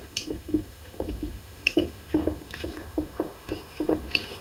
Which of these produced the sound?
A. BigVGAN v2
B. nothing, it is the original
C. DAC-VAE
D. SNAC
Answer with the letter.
C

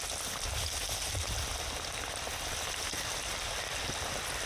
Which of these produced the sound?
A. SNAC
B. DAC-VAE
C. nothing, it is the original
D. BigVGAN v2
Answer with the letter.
C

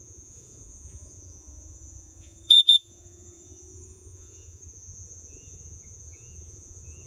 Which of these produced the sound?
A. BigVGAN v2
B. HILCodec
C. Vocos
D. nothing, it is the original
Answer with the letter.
C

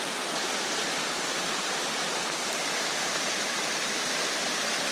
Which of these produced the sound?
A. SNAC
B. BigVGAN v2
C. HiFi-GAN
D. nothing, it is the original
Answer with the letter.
B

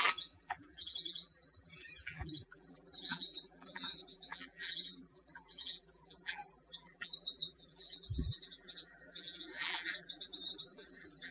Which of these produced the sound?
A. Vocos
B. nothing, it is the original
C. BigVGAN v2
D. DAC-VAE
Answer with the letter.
C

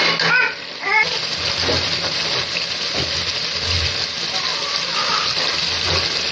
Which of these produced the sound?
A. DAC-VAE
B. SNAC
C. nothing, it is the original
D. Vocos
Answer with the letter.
C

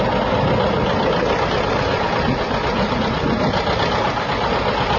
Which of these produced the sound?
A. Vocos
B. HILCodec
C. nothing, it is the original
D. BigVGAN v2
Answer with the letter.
C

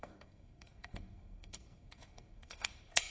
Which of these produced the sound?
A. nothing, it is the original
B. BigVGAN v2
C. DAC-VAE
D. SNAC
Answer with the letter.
D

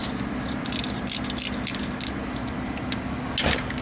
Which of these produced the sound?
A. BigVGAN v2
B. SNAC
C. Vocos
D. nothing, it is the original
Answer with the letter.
D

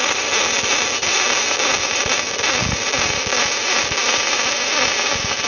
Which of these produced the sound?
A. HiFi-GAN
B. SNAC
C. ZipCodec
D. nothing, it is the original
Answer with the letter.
D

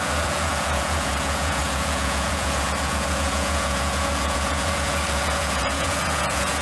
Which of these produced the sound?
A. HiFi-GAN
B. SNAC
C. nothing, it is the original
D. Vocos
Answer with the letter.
D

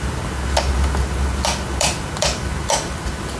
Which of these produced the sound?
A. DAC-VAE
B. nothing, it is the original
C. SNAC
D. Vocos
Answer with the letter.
B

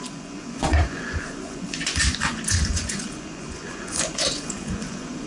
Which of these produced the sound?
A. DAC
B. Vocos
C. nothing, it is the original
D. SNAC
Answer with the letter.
B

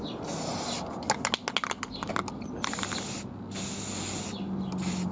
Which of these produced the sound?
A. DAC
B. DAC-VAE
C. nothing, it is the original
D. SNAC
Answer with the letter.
C